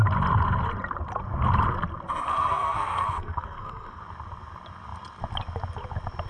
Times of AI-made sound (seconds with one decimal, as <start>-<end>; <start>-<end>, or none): 2.3-4.0